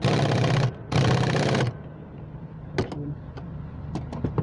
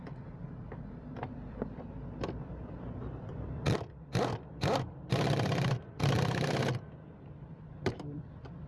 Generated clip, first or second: second